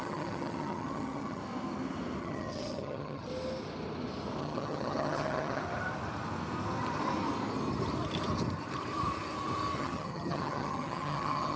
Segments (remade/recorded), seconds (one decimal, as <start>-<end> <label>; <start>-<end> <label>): 0.0-1.4 remade; 1.4-2.2 recorded; 2.2-3.3 remade; 3.3-4.4 recorded; 4.4-5.6 remade; 5.6-9.8 recorded; 9.8-11.6 remade